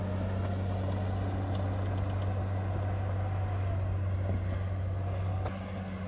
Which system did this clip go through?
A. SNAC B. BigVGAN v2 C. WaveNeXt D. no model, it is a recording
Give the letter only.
D